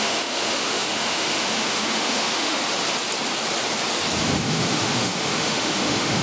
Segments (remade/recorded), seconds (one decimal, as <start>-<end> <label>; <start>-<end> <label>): 0.0-2.6 remade; 2.6-4.2 recorded; 4.2-6.2 remade